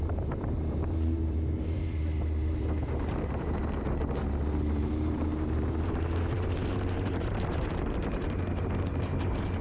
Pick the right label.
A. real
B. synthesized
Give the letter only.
B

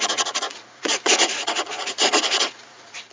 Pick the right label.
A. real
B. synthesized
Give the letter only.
B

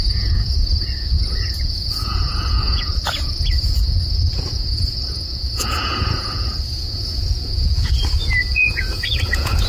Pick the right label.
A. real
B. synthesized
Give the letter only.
B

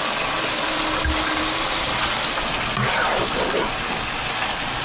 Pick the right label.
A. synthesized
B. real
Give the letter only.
B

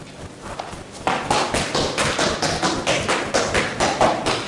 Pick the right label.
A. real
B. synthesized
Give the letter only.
A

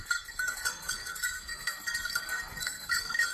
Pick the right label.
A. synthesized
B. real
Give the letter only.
A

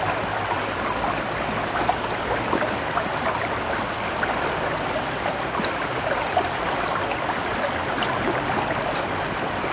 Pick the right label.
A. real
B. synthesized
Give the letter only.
A